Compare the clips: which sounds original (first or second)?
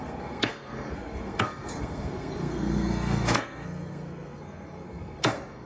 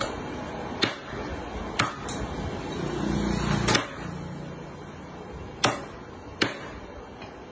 second